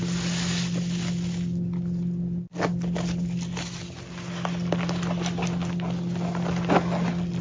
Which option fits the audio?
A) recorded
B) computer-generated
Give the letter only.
A